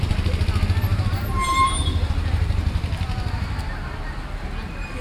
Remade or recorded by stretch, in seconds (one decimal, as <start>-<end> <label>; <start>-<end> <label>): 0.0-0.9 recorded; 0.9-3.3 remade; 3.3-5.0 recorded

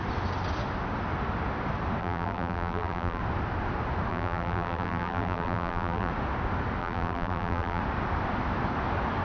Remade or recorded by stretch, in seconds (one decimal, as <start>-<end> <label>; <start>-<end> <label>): 0.0-2.0 recorded; 2.0-3.2 remade; 3.2-4.1 recorded; 4.1-6.1 remade; 6.1-6.8 recorded; 6.8-7.8 remade; 7.8-9.2 recorded

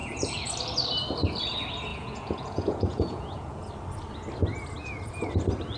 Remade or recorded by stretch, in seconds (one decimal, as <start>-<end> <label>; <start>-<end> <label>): 0.0-0.5 remade; 0.5-1.9 recorded; 1.9-3.7 remade; 3.7-4.8 recorded; 4.8-5.3 remade; 5.3-5.8 recorded